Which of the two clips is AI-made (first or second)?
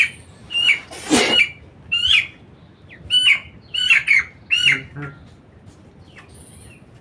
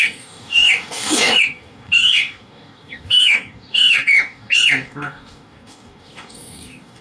second